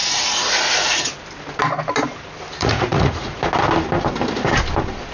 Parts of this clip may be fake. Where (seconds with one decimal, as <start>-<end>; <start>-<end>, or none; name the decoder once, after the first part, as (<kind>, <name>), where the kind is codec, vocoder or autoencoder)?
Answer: 2.6-3.4 (vocoder, Vocos)